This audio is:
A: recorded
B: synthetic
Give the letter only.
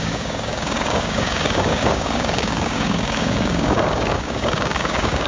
B